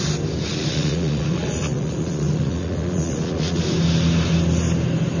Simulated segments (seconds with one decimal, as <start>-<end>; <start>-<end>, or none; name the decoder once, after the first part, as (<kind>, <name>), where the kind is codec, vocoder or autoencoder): 0.5-3.6 (vocoder, Vocos)